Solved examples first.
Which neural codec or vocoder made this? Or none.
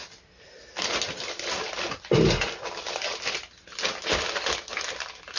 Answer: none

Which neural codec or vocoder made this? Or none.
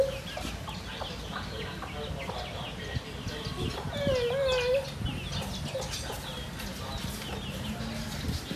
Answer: none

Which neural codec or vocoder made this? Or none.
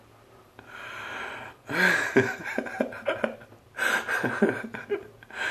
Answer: none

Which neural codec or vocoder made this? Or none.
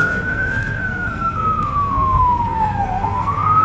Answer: codec, SNAC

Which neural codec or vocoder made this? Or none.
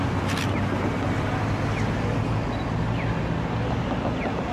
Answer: none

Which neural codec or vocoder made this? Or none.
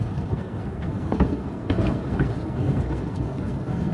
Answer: codec, SNAC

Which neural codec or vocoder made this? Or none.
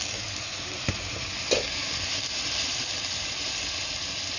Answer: none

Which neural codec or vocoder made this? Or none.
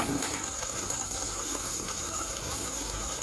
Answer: codec, SNAC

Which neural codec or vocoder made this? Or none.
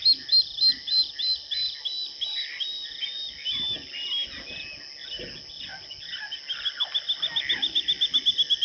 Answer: none